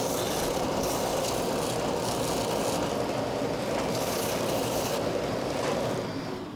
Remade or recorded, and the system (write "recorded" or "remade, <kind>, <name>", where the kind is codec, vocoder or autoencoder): recorded